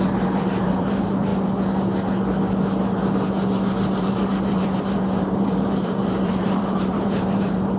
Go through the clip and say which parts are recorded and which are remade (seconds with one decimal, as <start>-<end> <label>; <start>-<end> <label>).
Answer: 0.0-1.3 remade; 1.3-4.0 recorded; 4.0-7.8 remade